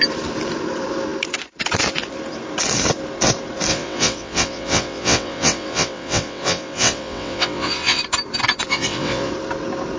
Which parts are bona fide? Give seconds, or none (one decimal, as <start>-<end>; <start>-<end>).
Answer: 0.0-3.7; 8.0-8.7; 9.3-10.0